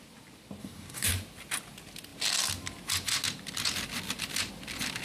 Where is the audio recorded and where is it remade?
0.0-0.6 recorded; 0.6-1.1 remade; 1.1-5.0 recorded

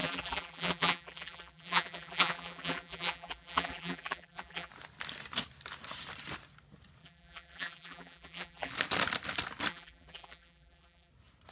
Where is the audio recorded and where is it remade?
0.0-4.7 remade; 4.7-7.0 recorded; 7.0-8.7 remade; 8.7-9.7 recorded; 9.7-11.1 remade; 11.1-11.5 recorded

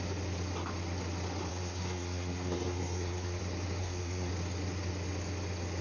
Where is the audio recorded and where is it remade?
0.0-1.5 recorded; 1.5-3.4 remade; 3.4-3.8 recorded; 3.8-4.3 remade; 4.3-5.8 recorded

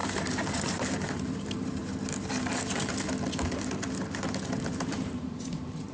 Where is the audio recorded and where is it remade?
0.0-0.7 recorded; 0.7-1.8 remade; 1.8-4.7 recorded; 4.7-5.9 remade